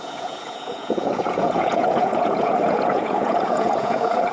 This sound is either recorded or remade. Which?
remade